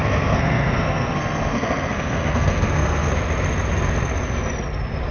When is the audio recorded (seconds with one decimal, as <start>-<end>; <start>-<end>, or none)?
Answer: 3.1-5.1